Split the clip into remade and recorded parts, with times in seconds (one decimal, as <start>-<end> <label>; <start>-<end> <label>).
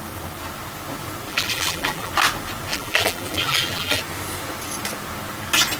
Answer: 0.0-1.3 recorded; 1.3-2.1 remade; 2.1-2.7 recorded; 2.7-4.0 remade; 4.0-5.8 recorded